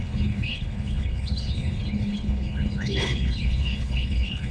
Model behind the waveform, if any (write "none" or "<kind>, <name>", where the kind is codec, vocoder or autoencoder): codec, HILCodec